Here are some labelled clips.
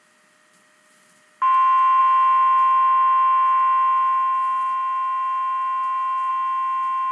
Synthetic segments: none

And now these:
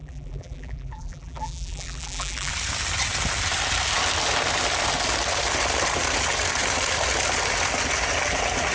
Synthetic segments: 0.0-2.5 (vocoder, BigVGAN v2)

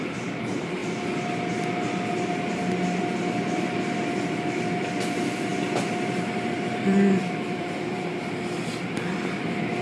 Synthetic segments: 0.0-0.8 (vocoder, BigVGAN v2); 3.3-9.8

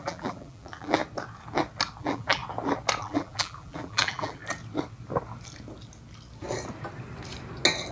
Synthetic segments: 0.0-1.0 (vocoder, BigVGAN v2); 2.0-2.4; 3.0-4.4

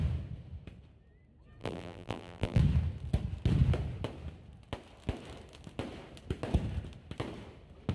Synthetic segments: 1.6-2.6 (vocoder, BigVGAN v2)

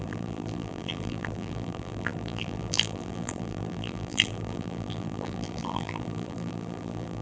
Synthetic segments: 0.0-7.2 (vocoder, BigVGAN v2)

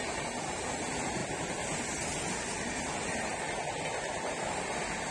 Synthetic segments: none

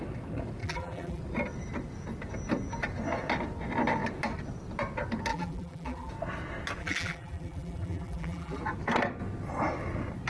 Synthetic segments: 0.6-1.2 (vocoder, BigVGAN v2); 5.3-6.1; 6.8-8.6